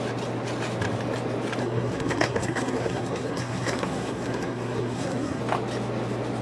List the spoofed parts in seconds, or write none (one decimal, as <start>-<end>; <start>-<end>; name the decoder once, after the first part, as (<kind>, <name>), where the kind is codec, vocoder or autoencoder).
1.6-5.4 (codec, SNAC)